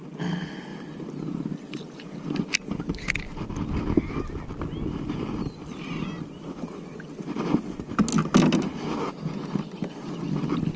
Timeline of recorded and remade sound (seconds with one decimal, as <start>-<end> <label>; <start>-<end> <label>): 0.0-10.8 recorded